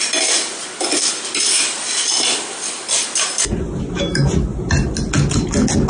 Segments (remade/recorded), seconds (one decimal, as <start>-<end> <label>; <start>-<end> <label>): 0.0-5.9 recorded